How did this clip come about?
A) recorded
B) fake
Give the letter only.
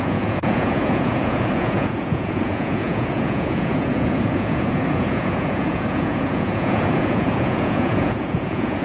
B